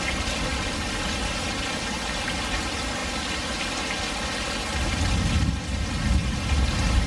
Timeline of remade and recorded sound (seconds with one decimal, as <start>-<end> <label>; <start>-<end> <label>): 0.0-6.2 recorded; 6.2-7.1 remade